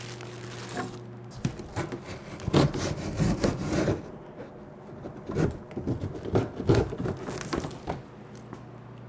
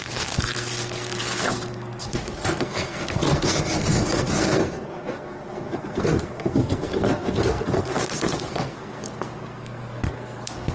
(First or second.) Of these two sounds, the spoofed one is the second